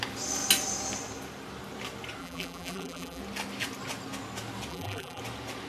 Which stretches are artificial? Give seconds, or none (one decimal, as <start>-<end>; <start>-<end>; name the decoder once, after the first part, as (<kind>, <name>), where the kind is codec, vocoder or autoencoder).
2.2-3.2 (vocoder, BigVGAN v2); 4.7-5.2